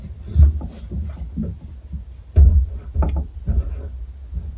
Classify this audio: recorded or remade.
recorded